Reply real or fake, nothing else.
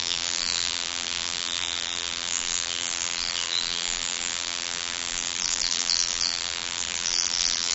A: fake